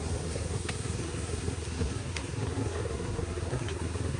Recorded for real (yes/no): no